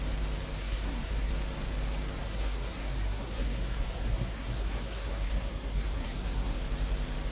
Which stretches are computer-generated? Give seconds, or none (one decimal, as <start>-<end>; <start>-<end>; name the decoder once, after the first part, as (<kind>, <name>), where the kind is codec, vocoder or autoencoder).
0.6-1.3 (codec, SNAC); 2.2-6.6